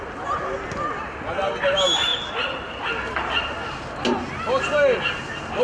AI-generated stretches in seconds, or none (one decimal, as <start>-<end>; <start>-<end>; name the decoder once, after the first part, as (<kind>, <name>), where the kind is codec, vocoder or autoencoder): none